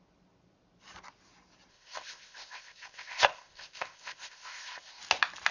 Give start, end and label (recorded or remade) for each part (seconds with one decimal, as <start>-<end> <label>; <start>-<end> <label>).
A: 0.0-1.7 recorded; 1.7-5.0 remade; 5.0-5.5 recorded